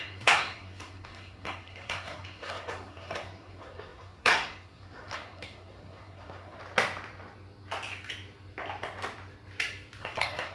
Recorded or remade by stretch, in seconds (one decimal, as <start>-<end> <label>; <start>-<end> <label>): 0.0-6.6 remade; 6.6-10.0 recorded; 10.0-10.5 remade